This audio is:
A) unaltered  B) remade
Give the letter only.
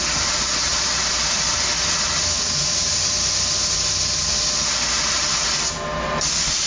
A